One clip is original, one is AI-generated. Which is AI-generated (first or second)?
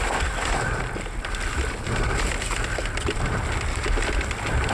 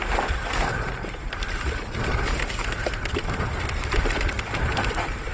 second